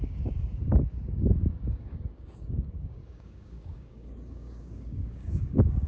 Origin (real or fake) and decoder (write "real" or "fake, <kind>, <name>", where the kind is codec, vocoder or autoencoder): fake, codec, DAC